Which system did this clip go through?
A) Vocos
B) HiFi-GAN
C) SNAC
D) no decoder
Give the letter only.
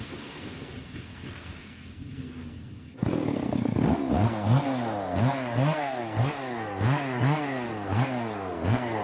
C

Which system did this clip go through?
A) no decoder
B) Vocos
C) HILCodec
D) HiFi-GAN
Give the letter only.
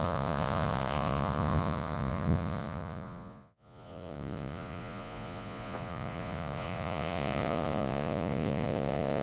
B